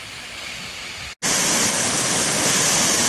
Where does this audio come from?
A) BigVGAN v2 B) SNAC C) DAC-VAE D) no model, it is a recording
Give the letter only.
D